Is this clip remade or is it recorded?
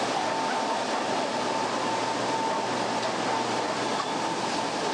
recorded